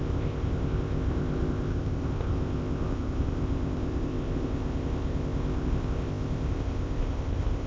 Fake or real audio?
fake